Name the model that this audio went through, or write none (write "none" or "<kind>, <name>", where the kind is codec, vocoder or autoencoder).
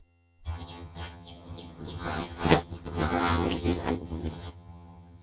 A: vocoder, HiFi-GAN